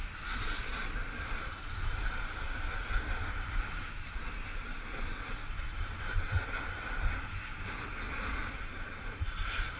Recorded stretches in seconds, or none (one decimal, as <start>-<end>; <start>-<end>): 0.0-9.8